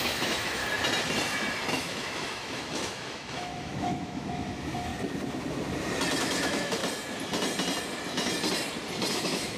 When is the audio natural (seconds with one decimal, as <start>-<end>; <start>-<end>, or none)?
0.6-1.7; 4.9-6.2; 6.8-9.1